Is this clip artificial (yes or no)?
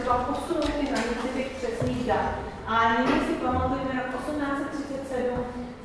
no